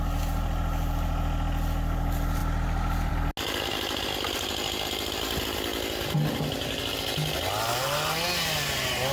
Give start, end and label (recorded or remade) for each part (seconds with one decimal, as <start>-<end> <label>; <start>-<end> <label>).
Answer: 0.0-9.1 recorded

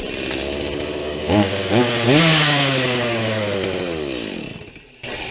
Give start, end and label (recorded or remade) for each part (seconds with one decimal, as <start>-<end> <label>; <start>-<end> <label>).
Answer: 0.0-1.0 recorded; 1.0-3.4 remade; 3.4-5.3 recorded

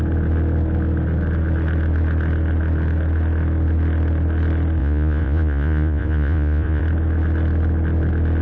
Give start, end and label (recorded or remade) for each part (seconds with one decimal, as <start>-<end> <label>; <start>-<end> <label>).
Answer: 0.0-4.8 recorded; 4.8-6.8 remade; 6.8-8.4 recorded